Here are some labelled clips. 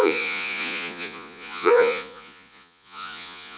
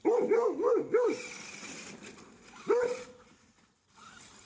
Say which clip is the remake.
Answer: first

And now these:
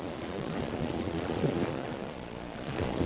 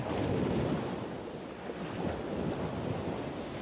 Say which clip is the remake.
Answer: first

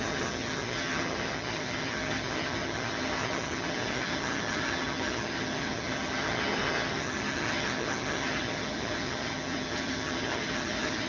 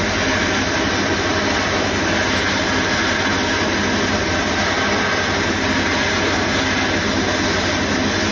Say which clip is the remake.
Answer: first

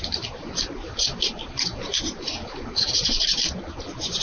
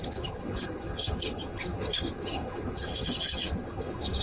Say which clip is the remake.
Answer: second